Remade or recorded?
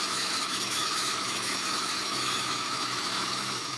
remade